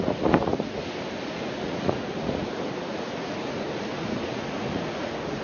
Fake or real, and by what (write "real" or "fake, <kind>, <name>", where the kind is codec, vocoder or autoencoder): fake, vocoder, Vocos